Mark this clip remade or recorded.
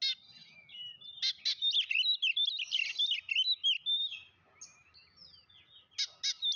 recorded